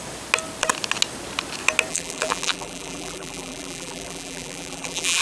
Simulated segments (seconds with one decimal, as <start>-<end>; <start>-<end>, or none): 1.9-5.2